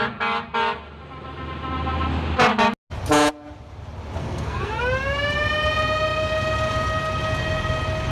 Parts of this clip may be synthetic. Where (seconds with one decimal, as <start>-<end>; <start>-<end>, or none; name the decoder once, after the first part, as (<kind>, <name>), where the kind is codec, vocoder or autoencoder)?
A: 4.2-4.8 (codec, SNAC)